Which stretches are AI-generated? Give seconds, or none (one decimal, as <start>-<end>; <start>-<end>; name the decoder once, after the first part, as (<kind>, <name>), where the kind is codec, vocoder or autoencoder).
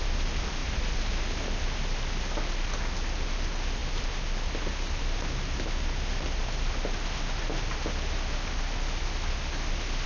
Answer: none